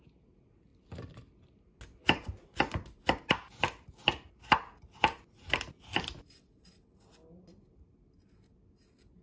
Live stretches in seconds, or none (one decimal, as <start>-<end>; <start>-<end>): 0.0-9.2